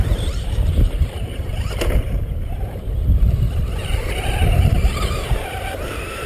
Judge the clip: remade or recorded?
remade